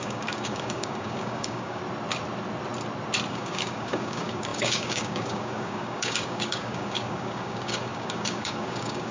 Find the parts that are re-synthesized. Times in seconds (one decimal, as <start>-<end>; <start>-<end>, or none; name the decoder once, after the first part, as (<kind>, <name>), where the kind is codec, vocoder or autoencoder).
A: 0.0-1.8 (codec, DAC); 3.3-9.1